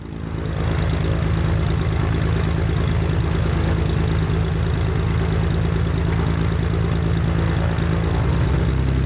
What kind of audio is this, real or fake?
real